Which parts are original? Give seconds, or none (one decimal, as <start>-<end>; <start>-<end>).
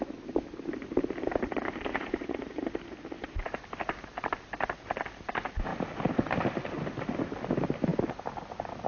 0.0-1.9; 2.6-8.9